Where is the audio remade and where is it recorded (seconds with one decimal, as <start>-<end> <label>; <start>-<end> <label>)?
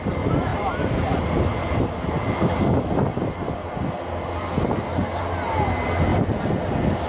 0.0-7.1 recorded